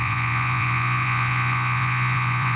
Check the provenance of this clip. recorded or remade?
remade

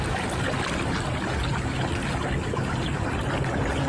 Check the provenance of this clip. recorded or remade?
recorded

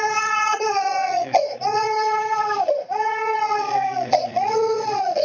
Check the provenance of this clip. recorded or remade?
remade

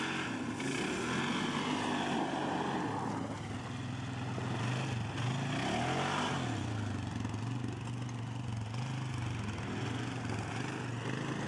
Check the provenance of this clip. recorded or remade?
recorded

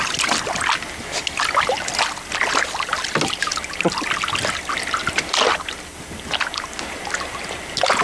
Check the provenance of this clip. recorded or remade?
recorded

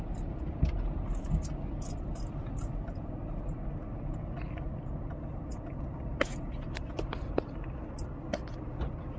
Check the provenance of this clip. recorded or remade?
recorded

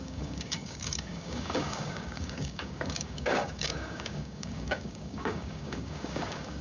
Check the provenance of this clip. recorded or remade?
remade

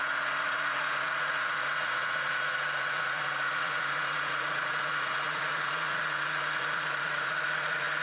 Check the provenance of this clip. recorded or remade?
remade